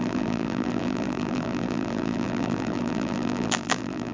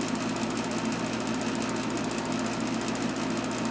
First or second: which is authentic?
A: second